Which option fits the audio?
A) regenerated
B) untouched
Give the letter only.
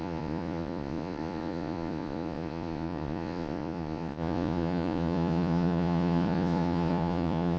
A